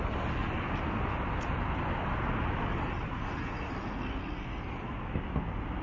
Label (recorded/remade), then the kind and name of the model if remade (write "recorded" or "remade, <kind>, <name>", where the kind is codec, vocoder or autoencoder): recorded